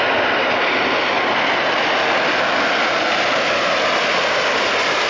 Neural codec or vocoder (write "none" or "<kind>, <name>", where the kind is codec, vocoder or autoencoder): none